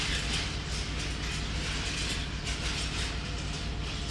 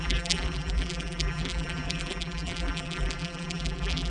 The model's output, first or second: second